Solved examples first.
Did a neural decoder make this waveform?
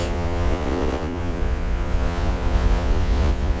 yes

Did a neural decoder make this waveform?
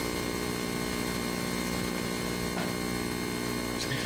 no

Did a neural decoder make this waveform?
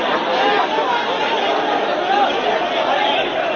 no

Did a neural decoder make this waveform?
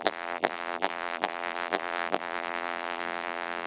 yes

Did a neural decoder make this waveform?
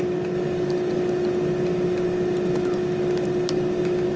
no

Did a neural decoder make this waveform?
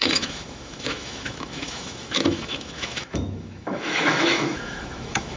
yes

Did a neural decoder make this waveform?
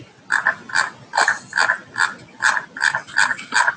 no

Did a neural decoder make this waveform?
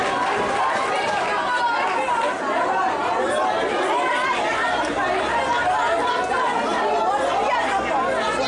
no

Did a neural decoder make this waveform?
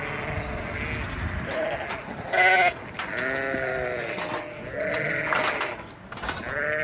no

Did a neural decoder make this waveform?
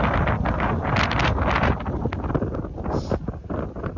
no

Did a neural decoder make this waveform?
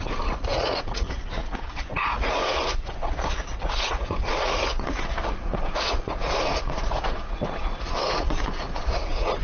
yes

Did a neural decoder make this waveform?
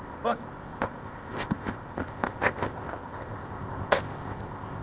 yes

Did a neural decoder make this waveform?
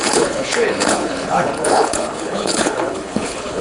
yes